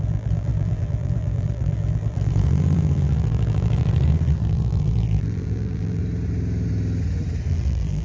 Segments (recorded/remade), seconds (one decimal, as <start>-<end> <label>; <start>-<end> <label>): 0.0-6.0 remade; 6.0-7.5 recorded; 7.5-8.0 remade